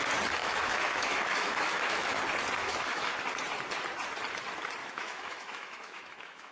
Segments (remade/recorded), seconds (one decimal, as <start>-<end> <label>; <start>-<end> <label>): 0.0-0.4 recorded; 0.4-2.2 remade; 2.2-2.6 recorded; 2.6-3.1 remade; 3.1-4.8 recorded; 4.8-6.5 remade